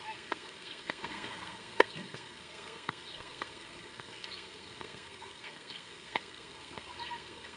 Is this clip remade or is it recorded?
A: remade